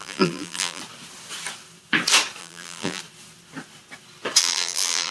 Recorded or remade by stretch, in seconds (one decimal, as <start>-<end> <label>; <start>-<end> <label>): 0.0-0.8 remade; 0.8-2.4 recorded; 2.4-3.0 remade; 3.0-4.4 recorded; 4.4-5.1 remade